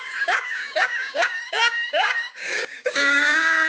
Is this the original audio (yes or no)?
no